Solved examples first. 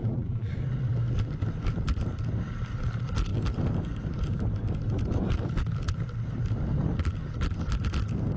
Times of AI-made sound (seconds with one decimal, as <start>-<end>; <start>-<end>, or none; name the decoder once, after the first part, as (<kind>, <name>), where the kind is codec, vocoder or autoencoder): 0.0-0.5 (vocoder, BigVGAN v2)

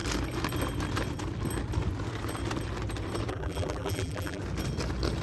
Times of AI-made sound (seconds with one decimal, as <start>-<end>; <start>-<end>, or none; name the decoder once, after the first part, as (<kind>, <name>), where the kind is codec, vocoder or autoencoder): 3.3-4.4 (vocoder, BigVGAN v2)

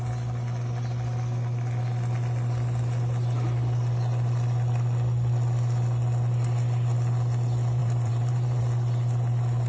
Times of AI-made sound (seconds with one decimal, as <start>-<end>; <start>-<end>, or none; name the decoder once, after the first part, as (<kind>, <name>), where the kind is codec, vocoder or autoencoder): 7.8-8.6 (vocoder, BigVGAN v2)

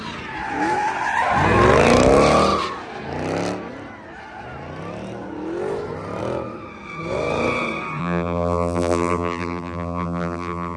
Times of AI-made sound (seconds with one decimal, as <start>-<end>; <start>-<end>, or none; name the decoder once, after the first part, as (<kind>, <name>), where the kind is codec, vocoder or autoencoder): 8.0-10.8 (vocoder, BigVGAN v2)

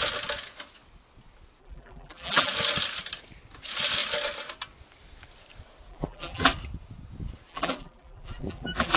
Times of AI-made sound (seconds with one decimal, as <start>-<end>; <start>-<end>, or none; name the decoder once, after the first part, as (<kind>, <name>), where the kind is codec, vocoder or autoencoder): 1.6-2.5 (vocoder, BigVGAN v2); 5.9-6.5; 7.5-9.0